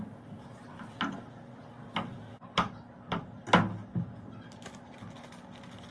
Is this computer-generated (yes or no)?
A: no